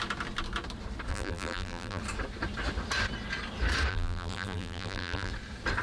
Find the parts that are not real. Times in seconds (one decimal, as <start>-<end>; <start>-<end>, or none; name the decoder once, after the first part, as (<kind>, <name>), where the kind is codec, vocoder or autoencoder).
1.1-2.0 (vocoder, BigVGAN v2); 3.9-5.3